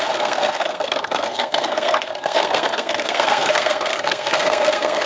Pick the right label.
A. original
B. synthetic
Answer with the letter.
B